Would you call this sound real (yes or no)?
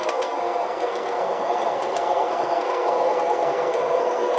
no